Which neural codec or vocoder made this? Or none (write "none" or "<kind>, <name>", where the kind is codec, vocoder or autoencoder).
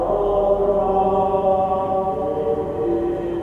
none